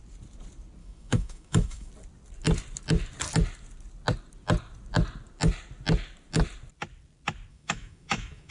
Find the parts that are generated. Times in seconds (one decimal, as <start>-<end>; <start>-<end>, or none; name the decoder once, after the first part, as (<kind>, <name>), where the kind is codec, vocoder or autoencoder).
0.8-1.9 (autoencoder, DAC-VAE); 7.5-8.5